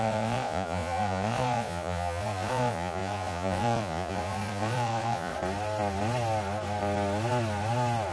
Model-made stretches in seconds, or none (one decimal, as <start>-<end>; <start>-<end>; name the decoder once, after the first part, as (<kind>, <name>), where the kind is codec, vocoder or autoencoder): 0.0-5.3 (vocoder, Vocos)